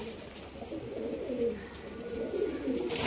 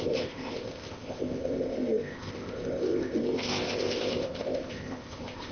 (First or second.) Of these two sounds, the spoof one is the second